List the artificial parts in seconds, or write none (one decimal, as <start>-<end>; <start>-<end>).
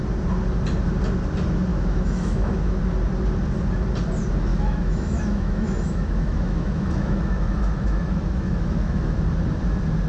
1.7-2.8; 4.5-9.2